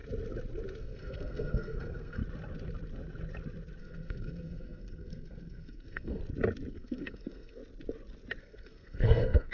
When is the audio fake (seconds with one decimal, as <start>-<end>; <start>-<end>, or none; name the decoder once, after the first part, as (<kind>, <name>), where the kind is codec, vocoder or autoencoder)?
0.8-2.2 (codec, SNAC); 3.8-6.2; 6.7-7.6; 8.4-9.5